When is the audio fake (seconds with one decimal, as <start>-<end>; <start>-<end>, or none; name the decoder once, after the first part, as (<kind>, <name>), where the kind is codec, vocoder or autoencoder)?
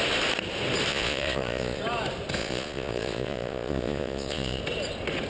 0.9-1.8 (vocoder, Vocos); 2.4-4.6